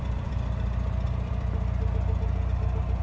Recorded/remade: remade